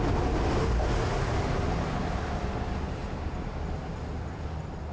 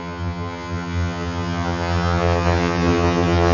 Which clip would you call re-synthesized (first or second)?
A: second